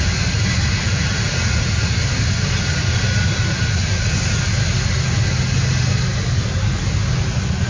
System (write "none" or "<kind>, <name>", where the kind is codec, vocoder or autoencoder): none